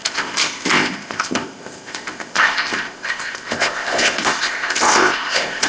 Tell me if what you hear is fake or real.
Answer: fake